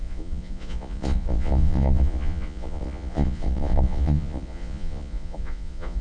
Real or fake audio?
fake